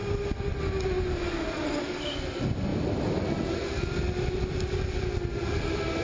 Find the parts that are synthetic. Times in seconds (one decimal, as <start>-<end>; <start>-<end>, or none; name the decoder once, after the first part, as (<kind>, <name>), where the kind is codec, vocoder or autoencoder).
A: none